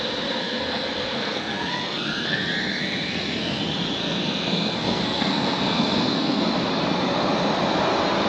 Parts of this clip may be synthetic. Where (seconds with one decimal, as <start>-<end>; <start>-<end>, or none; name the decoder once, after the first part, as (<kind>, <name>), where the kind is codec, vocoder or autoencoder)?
0.4-3.6 (codec, SNAC); 4.0-6.4